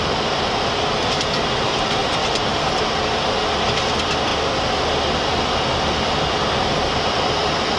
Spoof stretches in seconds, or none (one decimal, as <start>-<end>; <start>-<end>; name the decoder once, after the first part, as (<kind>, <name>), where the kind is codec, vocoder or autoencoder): 0.0-3.2 (vocoder, BigVGAN v2); 3.9-4.3; 4.8-7.8